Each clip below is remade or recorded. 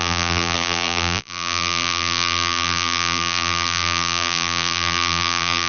remade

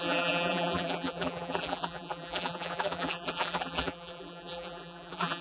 remade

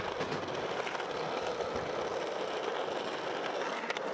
recorded